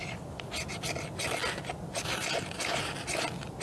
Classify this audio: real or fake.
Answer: real